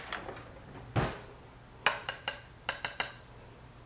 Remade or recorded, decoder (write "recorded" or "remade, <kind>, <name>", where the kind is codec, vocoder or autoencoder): recorded